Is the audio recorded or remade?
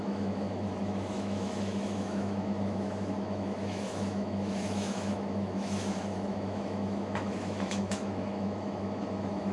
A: remade